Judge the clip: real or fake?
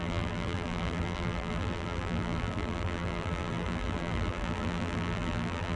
fake